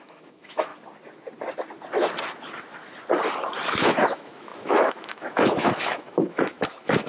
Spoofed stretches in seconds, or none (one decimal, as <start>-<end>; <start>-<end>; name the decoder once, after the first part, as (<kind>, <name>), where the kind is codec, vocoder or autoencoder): 0.0-0.7 (autoencoder, DAC-VAE); 3.8-7.1